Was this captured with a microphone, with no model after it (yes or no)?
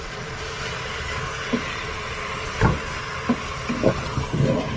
yes